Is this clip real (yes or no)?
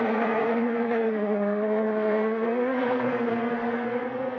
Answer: no